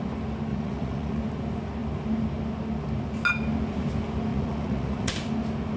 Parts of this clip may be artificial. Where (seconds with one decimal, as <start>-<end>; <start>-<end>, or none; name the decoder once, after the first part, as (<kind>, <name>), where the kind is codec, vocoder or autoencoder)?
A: 0.5-1.2 (vocoder, Vocos); 4.3-5.1